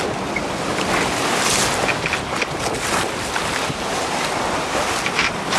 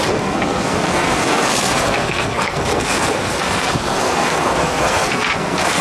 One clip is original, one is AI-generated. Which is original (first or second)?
first